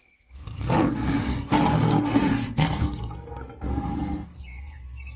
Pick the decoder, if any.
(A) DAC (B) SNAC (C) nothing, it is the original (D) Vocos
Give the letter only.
B